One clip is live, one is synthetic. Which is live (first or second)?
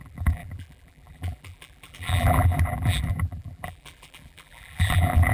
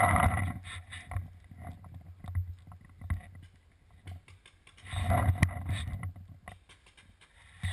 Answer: second